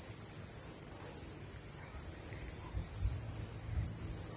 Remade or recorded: recorded